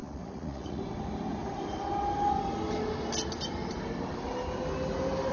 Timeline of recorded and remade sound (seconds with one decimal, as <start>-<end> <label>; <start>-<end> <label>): 0.0-0.8 remade; 0.8-5.3 recorded